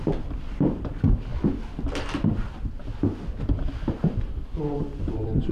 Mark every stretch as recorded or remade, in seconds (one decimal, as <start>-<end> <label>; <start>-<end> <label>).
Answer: 0.0-1.3 remade; 1.3-2.4 recorded; 2.4-2.8 remade; 2.8-4.8 recorded; 4.8-5.5 remade